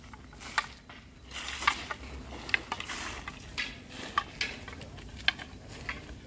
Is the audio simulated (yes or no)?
no